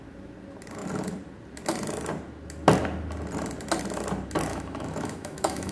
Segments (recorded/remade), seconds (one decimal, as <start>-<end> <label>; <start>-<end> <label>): 0.0-4.5 recorded; 4.5-5.7 remade